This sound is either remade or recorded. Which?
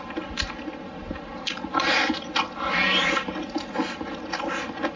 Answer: recorded